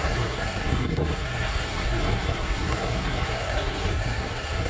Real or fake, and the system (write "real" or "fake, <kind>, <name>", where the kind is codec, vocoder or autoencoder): fake, codec, SNAC